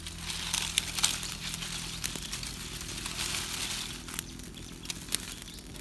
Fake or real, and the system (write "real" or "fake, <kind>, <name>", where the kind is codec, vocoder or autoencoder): real